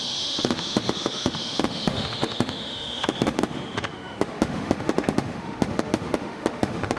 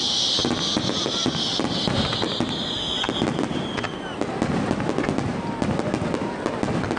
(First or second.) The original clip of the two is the second